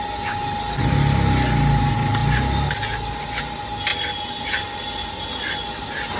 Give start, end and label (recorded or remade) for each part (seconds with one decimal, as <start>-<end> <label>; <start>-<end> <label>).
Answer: 0.0-6.2 recorded